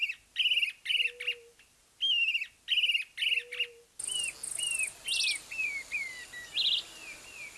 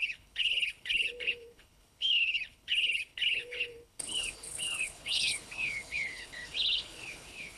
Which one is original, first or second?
first